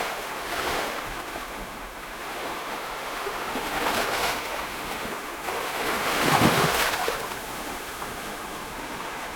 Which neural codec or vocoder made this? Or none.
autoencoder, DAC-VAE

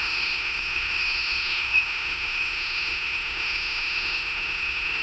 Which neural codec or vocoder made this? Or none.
autoencoder, DAC-VAE